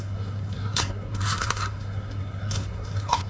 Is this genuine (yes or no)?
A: no